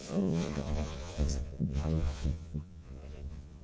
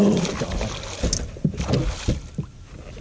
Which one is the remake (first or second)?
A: first